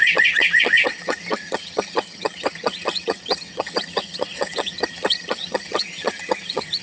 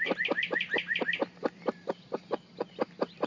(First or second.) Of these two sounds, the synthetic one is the first